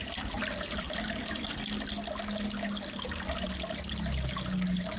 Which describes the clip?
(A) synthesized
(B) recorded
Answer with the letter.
B